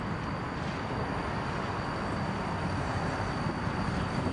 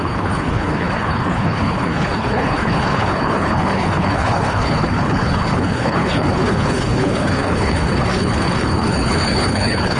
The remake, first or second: second